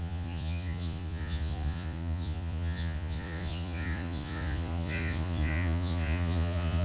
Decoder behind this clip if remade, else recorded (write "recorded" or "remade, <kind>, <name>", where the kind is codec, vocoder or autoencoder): remade, vocoder, Vocos